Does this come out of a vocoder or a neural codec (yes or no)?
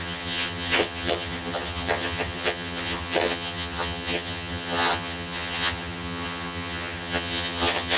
yes